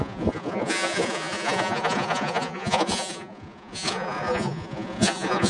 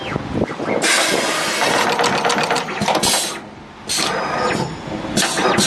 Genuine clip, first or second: second